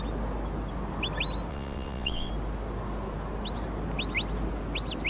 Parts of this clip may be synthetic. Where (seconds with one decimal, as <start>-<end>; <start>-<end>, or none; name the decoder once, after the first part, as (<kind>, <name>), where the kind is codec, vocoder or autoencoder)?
1.5-2.3 (vocoder, WaveNeXt)